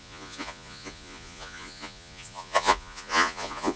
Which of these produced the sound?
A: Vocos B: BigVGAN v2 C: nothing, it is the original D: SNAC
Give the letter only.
A